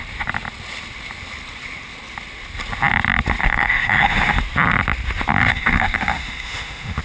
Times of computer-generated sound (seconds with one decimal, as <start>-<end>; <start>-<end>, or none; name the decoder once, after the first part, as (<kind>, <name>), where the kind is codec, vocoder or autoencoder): 3.4-4.4 (autoencoder, DAC-VAE); 5.4-7.0